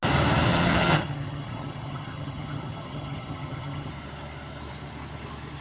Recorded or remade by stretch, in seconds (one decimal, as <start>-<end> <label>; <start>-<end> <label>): 0.0-0.5 recorded; 0.5-3.9 remade; 3.9-5.6 recorded